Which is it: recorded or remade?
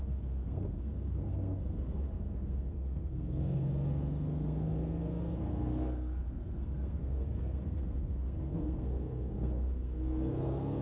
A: remade